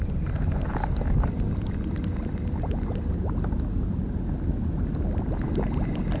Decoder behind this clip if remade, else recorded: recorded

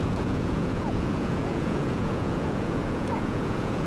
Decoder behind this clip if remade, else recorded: remade, vocoder, Vocos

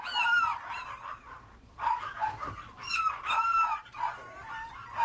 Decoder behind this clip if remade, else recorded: recorded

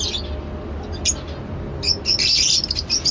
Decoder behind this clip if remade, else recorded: recorded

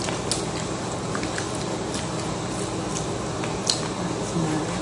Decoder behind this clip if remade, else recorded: recorded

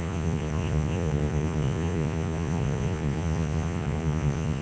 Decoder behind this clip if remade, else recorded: remade, vocoder, Vocos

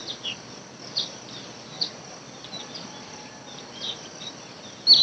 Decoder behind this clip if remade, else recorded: recorded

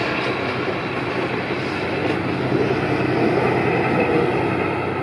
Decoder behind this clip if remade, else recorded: recorded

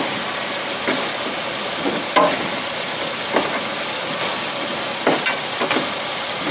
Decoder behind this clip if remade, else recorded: recorded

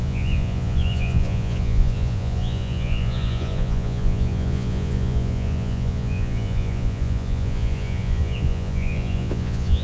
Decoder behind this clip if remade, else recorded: remade, vocoder, Vocos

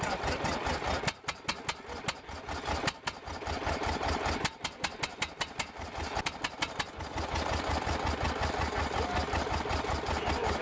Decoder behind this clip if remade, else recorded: recorded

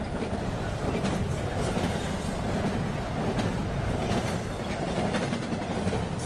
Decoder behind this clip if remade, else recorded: recorded